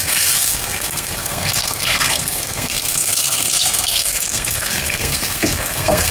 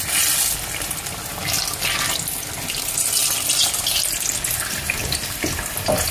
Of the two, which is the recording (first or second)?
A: second